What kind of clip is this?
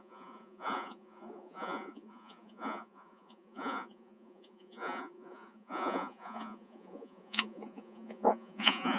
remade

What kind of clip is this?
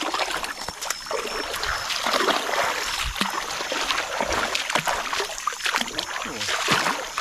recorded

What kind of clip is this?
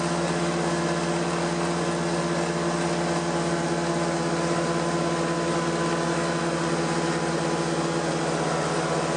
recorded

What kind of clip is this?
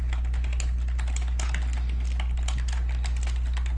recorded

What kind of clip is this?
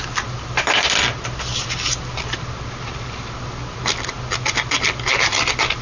recorded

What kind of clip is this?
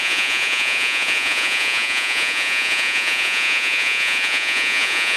remade